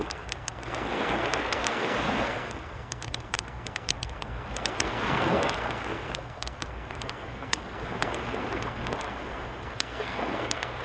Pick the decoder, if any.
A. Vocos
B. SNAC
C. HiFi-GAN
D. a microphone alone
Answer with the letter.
B